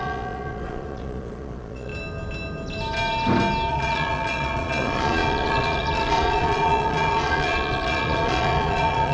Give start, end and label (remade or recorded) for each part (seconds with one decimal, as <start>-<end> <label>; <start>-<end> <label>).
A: 0.0-1.9 remade; 1.9-3.7 recorded; 3.7-9.1 remade